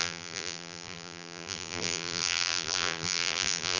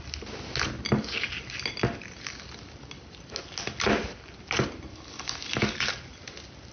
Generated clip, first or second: first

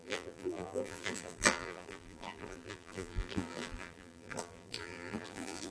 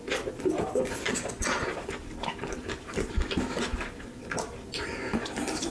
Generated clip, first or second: first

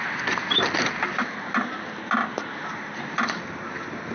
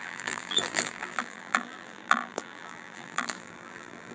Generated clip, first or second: second